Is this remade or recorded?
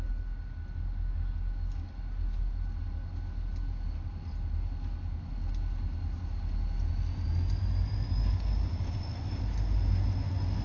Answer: recorded